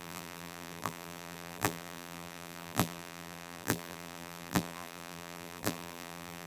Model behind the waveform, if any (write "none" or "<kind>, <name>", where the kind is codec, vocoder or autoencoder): vocoder, BigVGAN v2